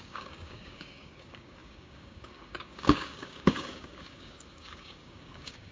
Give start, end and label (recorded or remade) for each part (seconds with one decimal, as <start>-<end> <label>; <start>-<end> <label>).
0.0-5.7 remade